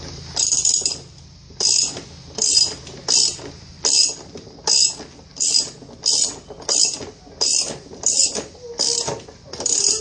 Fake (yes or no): no